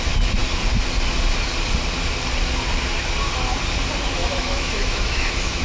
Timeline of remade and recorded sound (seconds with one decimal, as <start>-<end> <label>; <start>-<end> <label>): 0.0-4.2 recorded; 4.2-5.6 remade